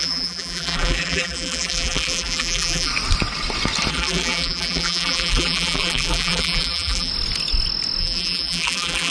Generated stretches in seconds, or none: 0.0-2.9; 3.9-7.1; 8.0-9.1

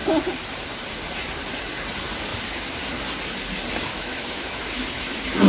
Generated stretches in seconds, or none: 3.9-5.0

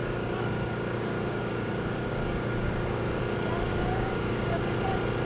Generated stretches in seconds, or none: 0.0-3.2; 3.7-4.6

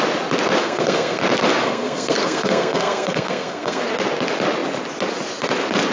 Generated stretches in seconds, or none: 0.6-1.2; 1.6-3.8